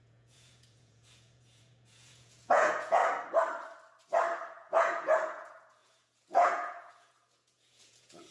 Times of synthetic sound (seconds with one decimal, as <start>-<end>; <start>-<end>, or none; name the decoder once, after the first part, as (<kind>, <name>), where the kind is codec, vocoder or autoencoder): 0.0-3.0 (vocoder, Vocos); 4.5-8.3